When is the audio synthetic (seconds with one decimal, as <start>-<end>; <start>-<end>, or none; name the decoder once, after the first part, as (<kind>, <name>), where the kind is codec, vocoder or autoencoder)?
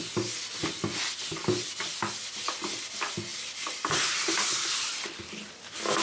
3.3-5.6 (vocoder, BigVGAN v2)